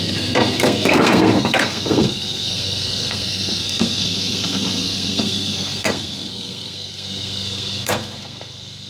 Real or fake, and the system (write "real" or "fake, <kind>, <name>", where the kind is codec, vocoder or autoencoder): fake, codec, SNAC